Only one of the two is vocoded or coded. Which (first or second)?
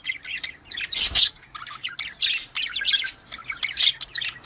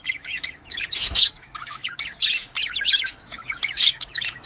second